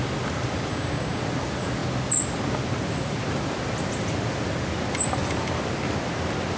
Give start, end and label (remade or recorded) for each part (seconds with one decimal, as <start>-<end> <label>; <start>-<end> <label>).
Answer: 0.0-0.7 recorded; 0.7-1.2 remade; 1.2-6.6 recorded